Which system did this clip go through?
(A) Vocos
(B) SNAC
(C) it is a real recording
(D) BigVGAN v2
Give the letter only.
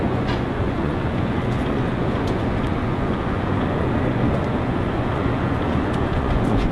A